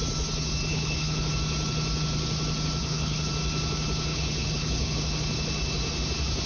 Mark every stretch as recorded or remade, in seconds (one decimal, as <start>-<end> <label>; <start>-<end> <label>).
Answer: 0.0-0.7 recorded; 0.7-1.3 remade; 1.3-2.8 recorded; 2.8-3.3 remade; 3.3-4.1 recorded; 4.1-5.0 remade; 5.0-6.5 recorded